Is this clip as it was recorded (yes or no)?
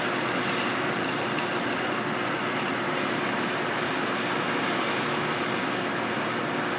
yes